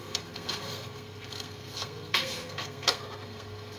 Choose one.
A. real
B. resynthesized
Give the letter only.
B